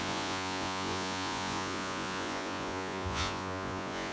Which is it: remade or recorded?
remade